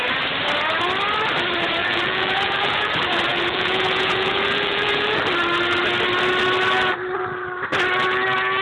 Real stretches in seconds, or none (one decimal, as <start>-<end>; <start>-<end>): 0.0-1.8; 2.9-3.3; 5.2-8.6